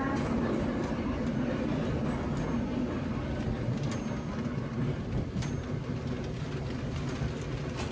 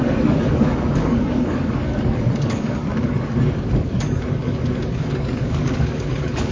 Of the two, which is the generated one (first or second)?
second